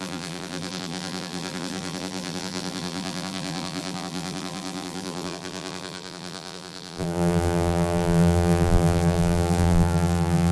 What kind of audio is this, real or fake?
fake